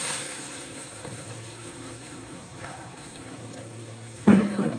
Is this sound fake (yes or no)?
yes